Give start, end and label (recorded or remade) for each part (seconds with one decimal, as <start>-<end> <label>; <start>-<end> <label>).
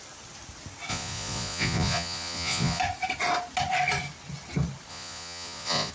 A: 0.0-0.9 recorded; 0.9-2.8 remade; 2.8-4.9 recorded; 4.9-5.9 remade